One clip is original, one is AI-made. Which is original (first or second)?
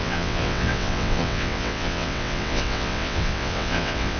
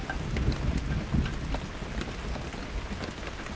second